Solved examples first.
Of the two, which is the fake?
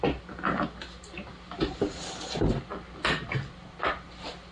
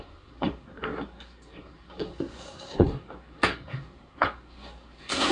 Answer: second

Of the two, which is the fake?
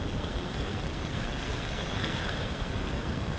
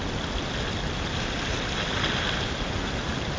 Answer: first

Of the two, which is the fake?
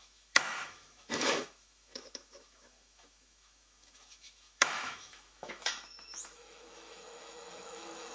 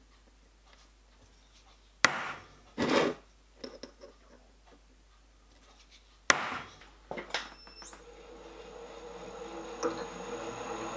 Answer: first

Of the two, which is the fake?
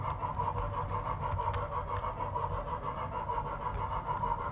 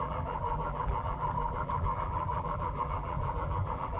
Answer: second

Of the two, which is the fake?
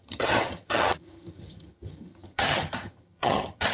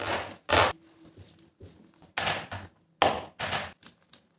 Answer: first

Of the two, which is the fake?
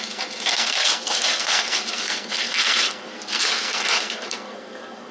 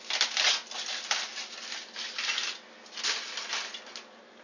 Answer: first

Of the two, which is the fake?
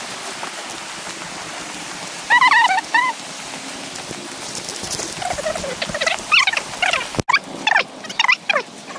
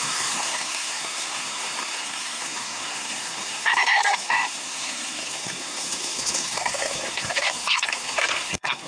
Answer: second